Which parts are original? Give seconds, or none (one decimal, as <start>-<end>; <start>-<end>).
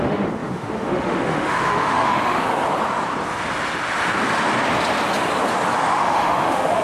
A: 2.5-5.8